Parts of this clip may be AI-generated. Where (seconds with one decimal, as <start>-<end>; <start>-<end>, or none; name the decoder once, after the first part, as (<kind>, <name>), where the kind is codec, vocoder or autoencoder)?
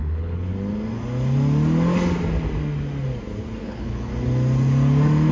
0.0-0.5 (codec, HILCodec); 3.6-4.1